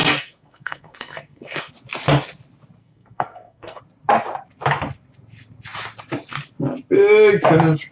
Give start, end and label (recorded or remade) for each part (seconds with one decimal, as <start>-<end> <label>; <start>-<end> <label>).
0.0-1.7 remade; 1.7-2.8 recorded; 2.8-3.8 remade; 3.8-7.9 recorded